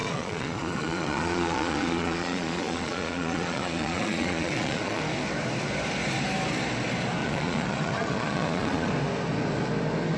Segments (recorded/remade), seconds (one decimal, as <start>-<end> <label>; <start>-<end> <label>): 0.0-5.0 remade; 5.0-7.2 recorded; 7.2-8.9 remade; 8.9-10.2 recorded